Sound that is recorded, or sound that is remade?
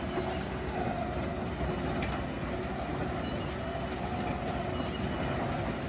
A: recorded